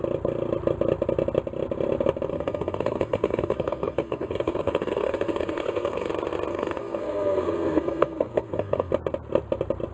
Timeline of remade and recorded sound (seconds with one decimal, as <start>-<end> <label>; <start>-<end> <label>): 0.0-2.3 recorded; 2.3-6.1 remade; 6.1-6.5 recorded; 6.5-8.9 remade; 8.9-9.9 recorded